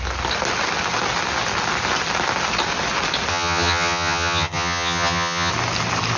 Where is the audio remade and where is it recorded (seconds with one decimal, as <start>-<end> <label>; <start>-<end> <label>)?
0.0-3.3 recorded; 3.3-5.5 remade; 5.5-6.2 recorded